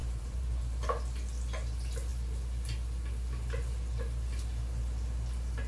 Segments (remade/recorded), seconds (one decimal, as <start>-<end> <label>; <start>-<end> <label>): 0.0-0.6 remade; 0.6-5.7 recorded